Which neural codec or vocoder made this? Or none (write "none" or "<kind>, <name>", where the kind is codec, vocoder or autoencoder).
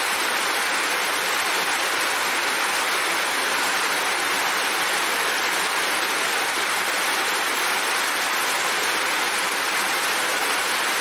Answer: none